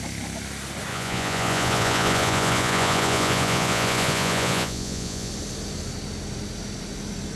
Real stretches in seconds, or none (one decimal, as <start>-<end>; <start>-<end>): 0.0-0.9; 5.3-7.4